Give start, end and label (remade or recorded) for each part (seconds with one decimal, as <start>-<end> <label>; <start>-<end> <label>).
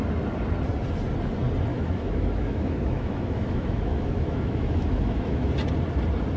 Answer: 0.0-1.7 recorded; 1.7-5.5 remade; 5.5-6.4 recorded